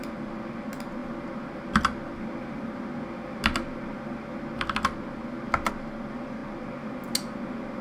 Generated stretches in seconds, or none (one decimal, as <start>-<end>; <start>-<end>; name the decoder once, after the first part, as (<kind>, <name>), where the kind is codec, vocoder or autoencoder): none